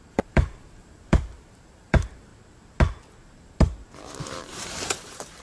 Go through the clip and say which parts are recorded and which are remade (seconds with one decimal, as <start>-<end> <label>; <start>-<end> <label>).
0.0-2.3 remade; 2.3-4.2 recorded; 4.2-5.4 remade